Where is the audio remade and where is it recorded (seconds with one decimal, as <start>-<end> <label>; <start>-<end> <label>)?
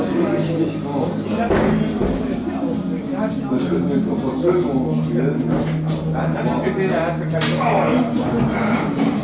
0.0-2.0 recorded; 2.0-3.1 remade; 3.1-9.2 recorded